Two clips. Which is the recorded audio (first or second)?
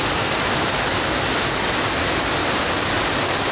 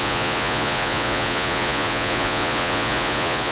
first